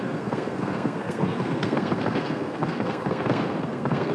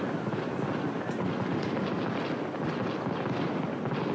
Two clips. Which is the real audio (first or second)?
second